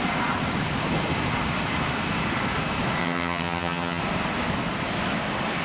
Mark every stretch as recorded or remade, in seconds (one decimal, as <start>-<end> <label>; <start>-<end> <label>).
0.0-3.0 recorded; 3.0-4.0 remade; 4.0-5.6 recorded

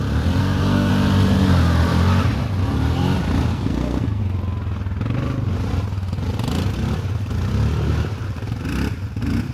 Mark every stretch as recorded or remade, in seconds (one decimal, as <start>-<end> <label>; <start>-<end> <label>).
0.0-0.4 recorded; 0.4-0.9 remade; 0.9-3.5 recorded; 3.5-4.2 remade; 4.2-9.5 recorded

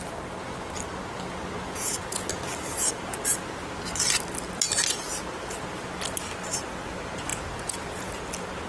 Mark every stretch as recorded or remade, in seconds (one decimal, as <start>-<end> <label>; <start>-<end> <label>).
0.0-1.6 recorded; 1.6-2.3 remade; 2.3-7.3 recorded; 7.3-8.1 remade; 8.1-8.7 recorded

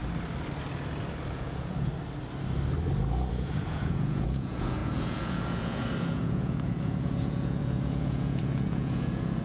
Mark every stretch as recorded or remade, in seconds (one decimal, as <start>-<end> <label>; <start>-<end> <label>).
0.0-1.3 recorded; 1.3-1.9 remade; 1.9-3.3 recorded; 3.3-9.4 remade